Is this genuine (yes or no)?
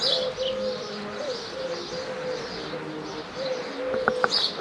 yes